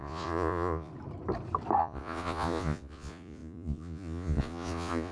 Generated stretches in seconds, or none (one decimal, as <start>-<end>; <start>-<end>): 0.0-0.9; 1.8-5.1